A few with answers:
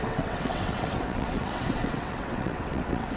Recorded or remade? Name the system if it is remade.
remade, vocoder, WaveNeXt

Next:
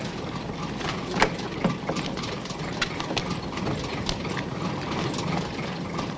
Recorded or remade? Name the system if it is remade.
recorded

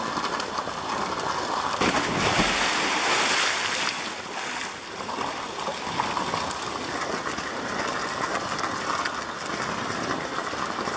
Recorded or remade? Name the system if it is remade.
recorded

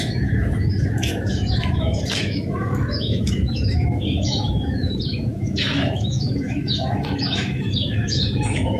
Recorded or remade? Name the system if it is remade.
remade, autoencoder, DAC-VAE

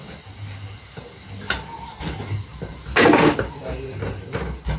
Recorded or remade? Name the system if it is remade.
recorded